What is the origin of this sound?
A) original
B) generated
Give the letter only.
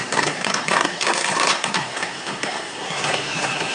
B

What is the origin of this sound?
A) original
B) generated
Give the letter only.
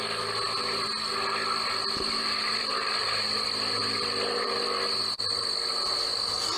A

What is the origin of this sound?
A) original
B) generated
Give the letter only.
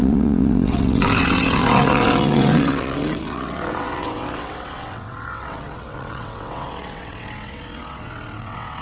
B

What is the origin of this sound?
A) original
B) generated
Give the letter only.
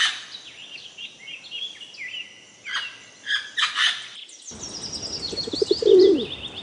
A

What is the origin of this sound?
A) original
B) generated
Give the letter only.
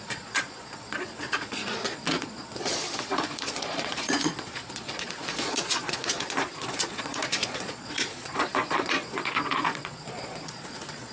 B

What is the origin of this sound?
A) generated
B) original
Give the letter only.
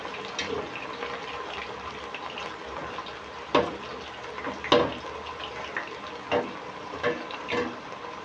B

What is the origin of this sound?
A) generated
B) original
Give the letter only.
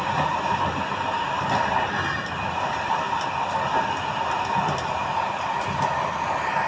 B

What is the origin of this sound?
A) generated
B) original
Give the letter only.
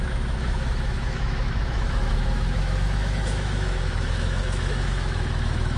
A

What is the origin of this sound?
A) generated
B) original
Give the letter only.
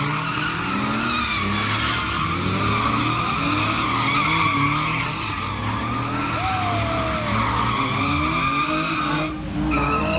B